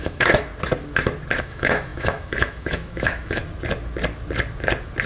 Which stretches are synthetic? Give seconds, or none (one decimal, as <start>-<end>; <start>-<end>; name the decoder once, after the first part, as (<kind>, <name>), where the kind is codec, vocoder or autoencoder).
0.0-0.5 (autoencoder, DAC-VAE); 1.4-3.4